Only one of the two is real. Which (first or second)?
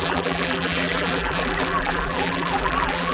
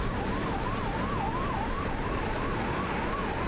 second